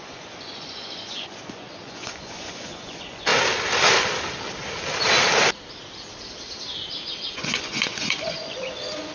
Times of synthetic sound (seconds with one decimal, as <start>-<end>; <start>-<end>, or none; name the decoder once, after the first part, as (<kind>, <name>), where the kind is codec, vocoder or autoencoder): 0.0-3.3 (vocoder, Vocos); 7.3-9.1